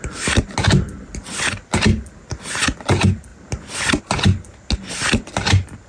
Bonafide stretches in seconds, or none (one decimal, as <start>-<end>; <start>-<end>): 0.0-5.9